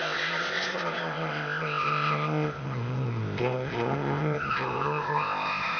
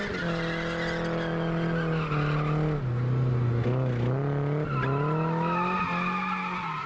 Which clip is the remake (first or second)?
first